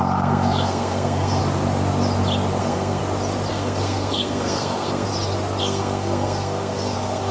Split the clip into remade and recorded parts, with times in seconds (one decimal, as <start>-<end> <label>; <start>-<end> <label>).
0.0-1.4 remade; 1.4-2.6 recorded; 2.6-3.0 remade; 3.0-3.5 recorded; 3.5-5.1 remade; 5.1-5.6 recorded; 5.6-7.3 remade